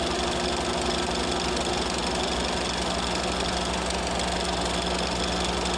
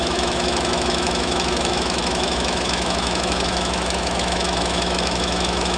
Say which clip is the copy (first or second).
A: second